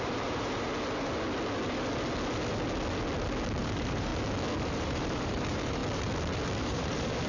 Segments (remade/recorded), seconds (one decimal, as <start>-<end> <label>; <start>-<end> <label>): 0.0-0.7 remade; 0.7-3.6 recorded; 3.6-4.1 remade; 4.1-4.6 recorded; 4.6-5.8 remade; 5.8-6.6 recorded; 6.6-7.3 remade